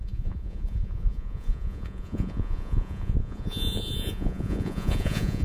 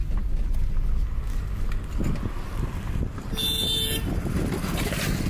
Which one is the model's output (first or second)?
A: first